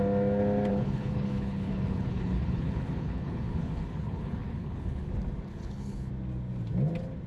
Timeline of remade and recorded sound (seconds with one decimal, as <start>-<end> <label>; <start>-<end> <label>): 0.0-0.7 recorded; 0.7-5.1 remade; 5.1-5.5 recorded; 5.5-6.1 remade; 6.1-7.3 recorded